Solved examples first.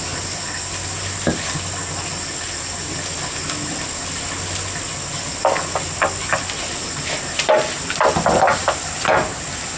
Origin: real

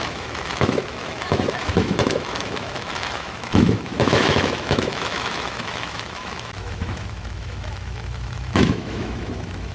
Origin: fake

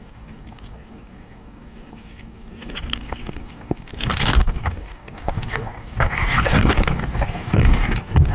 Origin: fake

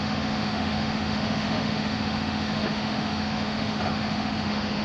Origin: fake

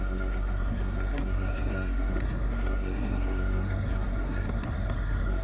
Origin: fake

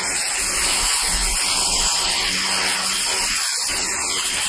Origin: real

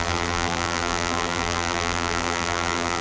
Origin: fake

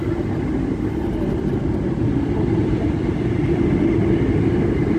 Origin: real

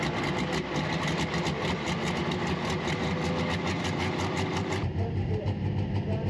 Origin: real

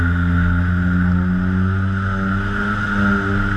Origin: real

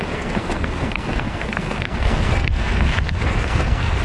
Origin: fake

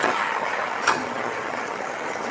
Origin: fake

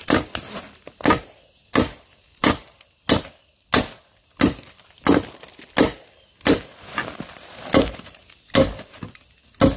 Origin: real